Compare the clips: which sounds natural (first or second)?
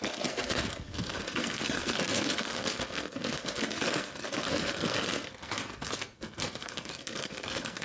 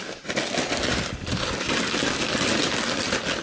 second